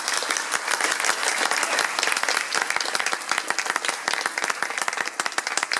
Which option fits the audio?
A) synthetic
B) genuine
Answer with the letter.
B